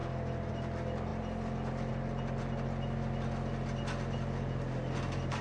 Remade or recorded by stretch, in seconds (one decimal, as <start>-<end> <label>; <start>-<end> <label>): 0.0-5.4 recorded